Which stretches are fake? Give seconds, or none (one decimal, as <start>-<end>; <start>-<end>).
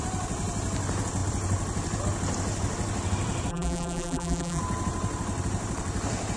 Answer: 3.5-4.6